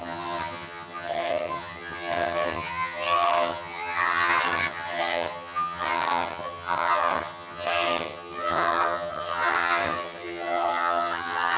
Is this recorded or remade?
remade